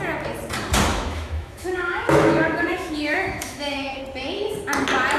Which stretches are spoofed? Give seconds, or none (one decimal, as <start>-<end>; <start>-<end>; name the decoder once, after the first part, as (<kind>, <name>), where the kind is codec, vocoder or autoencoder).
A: 0.9-4.0 (autoencoder, DAC-VAE)